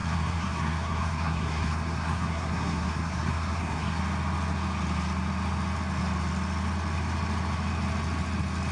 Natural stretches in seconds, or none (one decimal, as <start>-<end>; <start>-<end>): 4.0-8.7